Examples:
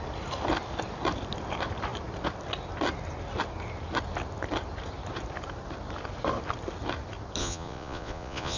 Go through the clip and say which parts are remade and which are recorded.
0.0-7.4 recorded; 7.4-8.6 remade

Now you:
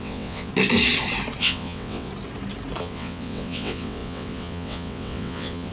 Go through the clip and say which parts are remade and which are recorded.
0.0-0.5 remade; 0.5-1.4 recorded; 1.4-2.1 remade; 2.1-2.8 recorded; 2.8-5.7 remade

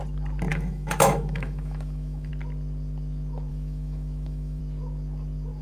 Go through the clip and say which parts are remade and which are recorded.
0.0-0.5 recorded; 0.5-2.3 remade; 2.3-3.5 recorded; 3.5-4.6 remade; 4.6-5.6 recorded

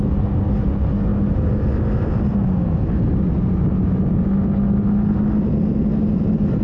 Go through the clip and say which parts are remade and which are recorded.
0.0-6.6 recorded